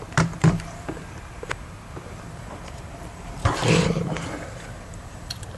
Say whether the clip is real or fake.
fake